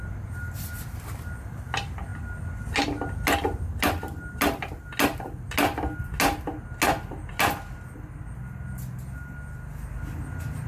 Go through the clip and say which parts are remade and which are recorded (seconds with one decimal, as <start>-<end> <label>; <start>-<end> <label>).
0.0-10.7 recorded